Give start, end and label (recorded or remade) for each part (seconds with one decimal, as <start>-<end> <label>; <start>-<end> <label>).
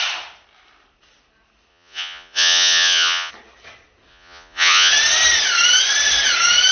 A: 0.0-1.7 recorded; 1.7-3.3 remade; 3.3-4.1 recorded; 4.1-4.9 remade; 4.9-6.7 recorded